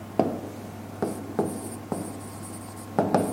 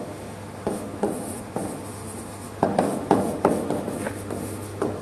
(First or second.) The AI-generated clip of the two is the second